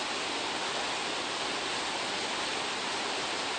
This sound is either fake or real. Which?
real